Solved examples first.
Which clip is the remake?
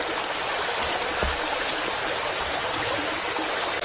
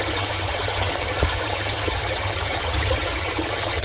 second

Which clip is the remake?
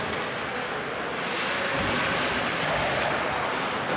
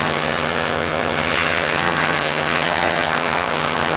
second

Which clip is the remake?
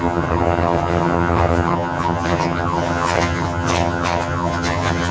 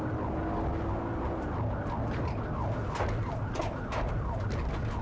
first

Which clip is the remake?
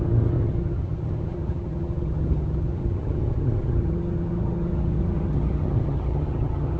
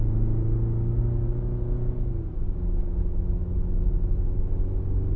first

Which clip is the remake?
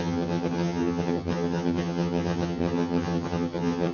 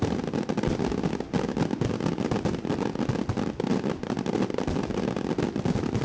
first